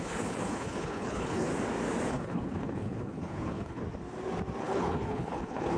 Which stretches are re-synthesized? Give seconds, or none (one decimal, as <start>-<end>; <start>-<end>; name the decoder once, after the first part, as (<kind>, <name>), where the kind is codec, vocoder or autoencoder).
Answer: 0.0-1.5 (codec, HILCodec); 2.1-3.8; 4.6-5.8